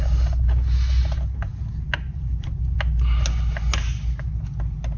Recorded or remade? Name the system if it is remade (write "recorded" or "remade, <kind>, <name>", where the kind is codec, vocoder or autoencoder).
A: recorded